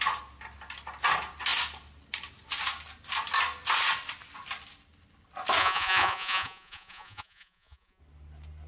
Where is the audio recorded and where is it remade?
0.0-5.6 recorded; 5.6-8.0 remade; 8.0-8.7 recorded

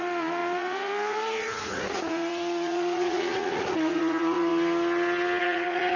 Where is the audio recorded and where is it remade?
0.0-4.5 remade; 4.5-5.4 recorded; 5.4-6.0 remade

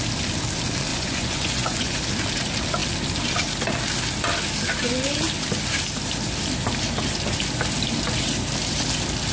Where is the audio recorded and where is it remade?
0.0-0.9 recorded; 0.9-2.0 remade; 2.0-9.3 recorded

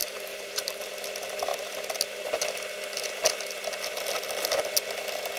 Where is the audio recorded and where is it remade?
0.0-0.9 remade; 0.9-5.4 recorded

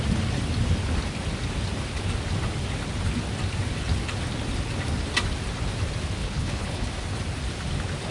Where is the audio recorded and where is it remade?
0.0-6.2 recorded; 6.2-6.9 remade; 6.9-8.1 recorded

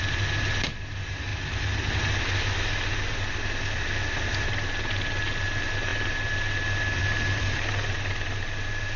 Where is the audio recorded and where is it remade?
0.0-9.0 recorded

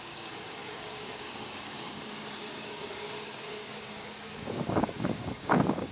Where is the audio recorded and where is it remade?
0.0-5.9 remade